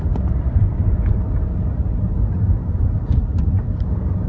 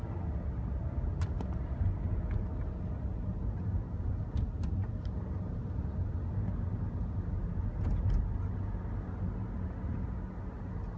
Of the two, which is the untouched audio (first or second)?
second